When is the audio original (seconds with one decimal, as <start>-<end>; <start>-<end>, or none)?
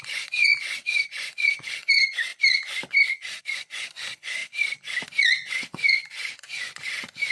2.3-3.4; 4.4-5.5